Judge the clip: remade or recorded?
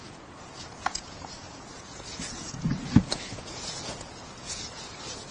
remade